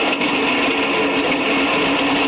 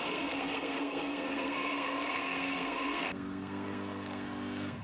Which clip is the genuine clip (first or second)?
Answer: first